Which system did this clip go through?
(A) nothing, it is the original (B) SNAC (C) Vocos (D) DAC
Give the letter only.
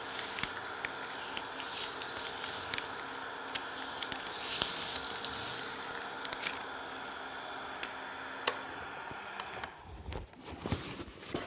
A